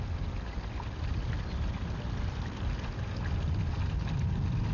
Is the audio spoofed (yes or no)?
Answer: no